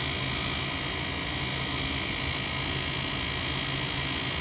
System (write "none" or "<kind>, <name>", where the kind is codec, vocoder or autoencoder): none